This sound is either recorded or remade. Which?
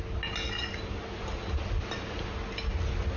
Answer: recorded